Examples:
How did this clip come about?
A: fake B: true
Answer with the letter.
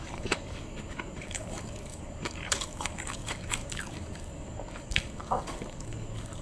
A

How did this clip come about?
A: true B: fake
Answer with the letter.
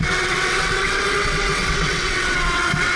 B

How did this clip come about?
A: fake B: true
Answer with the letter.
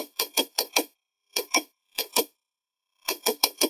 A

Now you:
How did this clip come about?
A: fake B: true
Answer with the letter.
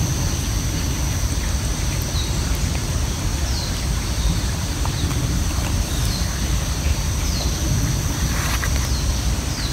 B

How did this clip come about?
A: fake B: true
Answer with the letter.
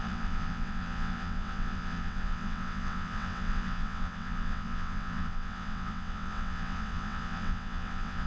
A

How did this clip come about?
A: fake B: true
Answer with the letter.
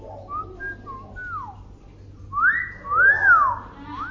B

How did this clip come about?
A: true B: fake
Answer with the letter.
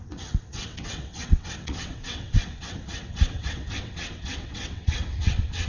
B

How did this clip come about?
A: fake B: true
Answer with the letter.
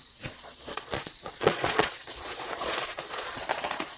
A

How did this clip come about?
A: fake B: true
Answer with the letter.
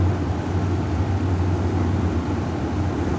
B